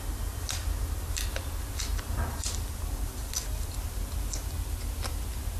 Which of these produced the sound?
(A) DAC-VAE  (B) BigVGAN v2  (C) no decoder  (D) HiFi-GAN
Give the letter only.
C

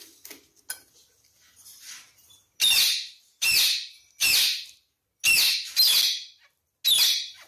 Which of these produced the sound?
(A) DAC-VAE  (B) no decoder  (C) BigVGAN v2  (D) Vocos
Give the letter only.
B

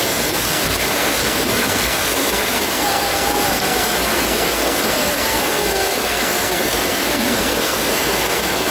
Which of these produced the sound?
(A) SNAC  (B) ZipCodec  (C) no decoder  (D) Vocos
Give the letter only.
A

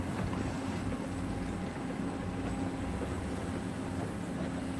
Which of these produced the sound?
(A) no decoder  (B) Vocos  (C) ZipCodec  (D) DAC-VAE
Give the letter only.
A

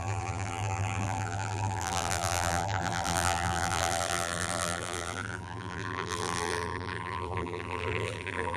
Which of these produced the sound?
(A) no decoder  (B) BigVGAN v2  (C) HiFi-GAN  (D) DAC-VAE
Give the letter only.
B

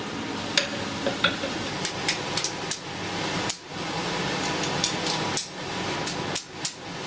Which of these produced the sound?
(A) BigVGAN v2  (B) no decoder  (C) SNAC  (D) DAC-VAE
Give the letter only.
B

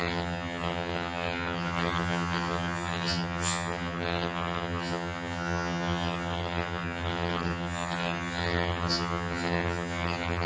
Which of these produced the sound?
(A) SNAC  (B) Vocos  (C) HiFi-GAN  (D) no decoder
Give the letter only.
C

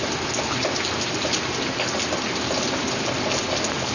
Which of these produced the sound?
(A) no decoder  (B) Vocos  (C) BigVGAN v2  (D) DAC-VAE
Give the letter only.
C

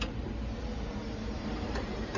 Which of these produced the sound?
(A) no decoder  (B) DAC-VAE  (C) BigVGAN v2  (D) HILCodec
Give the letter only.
C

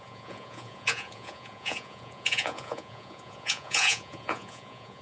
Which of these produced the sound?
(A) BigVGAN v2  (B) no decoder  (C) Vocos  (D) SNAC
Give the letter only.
C